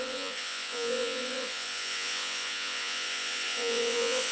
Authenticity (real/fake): fake